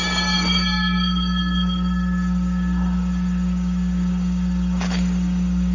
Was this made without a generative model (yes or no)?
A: no